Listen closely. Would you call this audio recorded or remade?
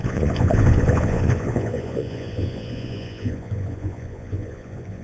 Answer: remade